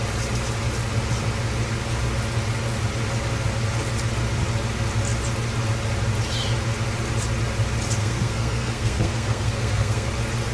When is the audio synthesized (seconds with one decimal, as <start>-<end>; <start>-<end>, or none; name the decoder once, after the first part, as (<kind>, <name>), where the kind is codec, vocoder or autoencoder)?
8.0-10.1 (codec, SNAC)

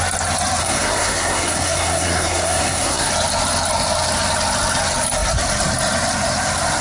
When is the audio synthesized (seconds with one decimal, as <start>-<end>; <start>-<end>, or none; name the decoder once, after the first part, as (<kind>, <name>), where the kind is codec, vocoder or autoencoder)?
0.6-3.1 (codec, SNAC)

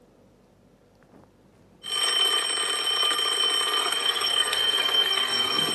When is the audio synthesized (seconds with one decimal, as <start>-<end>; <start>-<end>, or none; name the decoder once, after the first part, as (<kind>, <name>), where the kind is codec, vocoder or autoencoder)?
3.8-5.7 (codec, SNAC)

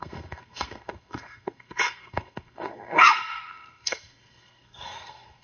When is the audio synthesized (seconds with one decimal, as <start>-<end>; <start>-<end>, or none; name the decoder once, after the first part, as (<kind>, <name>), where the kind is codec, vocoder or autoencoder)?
0.0-5.4 (codec, SNAC)

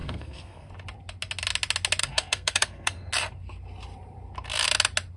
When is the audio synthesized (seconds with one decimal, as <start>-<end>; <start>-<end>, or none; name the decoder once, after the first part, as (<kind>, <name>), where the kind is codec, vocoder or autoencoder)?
0.0-0.7 (codec, SNAC); 2.0-3.1

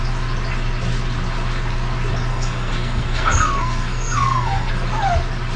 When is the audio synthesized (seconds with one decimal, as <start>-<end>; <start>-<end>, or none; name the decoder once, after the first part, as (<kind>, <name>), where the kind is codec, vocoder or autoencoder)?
2.3-4.7 (codec, SNAC)

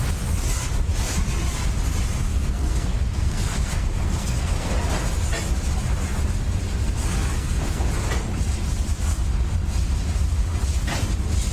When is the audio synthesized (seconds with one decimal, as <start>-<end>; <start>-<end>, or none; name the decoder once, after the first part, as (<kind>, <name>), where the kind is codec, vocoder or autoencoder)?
2.3-4.7 (codec, SNAC); 6.8-7.9

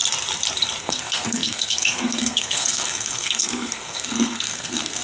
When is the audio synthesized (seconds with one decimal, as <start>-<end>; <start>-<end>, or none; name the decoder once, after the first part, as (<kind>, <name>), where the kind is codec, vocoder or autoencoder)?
0.8-5.0 (codec, SNAC)